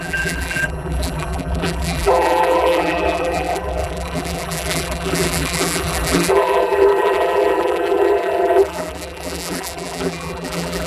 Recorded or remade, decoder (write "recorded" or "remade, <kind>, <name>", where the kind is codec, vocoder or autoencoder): remade, vocoder, BigVGAN v2